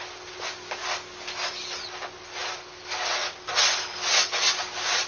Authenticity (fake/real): real